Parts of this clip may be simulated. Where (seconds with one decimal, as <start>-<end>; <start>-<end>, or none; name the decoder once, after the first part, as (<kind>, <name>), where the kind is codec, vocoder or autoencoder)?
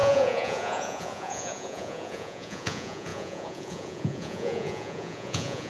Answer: 0.0-5.7 (vocoder, Vocos)